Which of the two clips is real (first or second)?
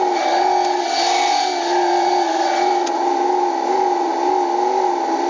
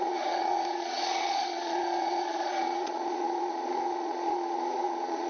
first